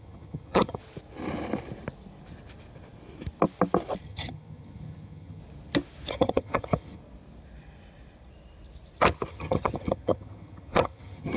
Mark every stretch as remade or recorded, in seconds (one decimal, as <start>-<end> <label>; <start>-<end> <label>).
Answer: 0.0-0.8 remade; 0.8-4.0 recorded; 4.0-5.4 remade; 5.4-6.1 recorded; 6.1-7.0 remade; 7.0-9.3 recorded; 9.3-11.4 remade